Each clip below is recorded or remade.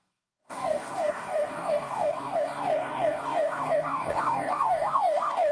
remade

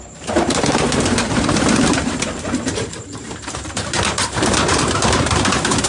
remade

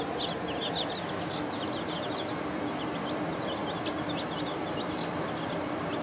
recorded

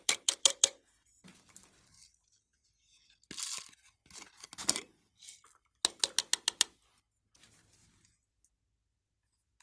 recorded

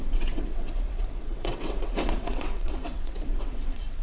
remade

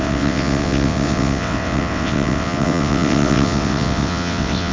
remade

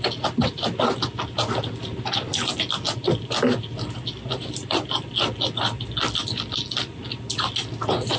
recorded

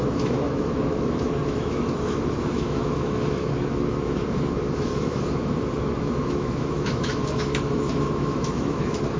remade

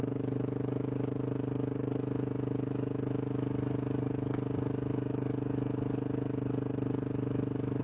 remade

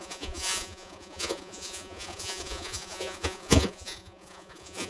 remade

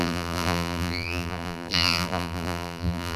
remade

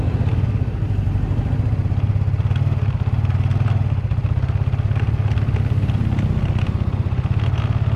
recorded